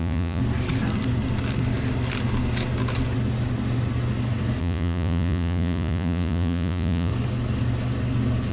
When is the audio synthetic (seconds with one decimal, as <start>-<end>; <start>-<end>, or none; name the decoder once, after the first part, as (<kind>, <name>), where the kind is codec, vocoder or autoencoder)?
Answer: 0.0-0.4 (vocoder, Vocos); 4.6-7.1